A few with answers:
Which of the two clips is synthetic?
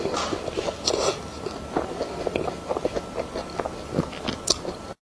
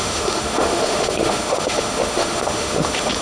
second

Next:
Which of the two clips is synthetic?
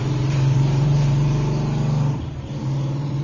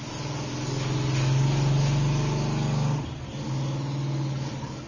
first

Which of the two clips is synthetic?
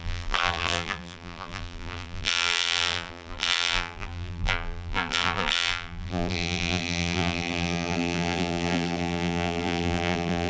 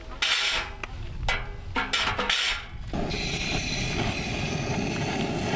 first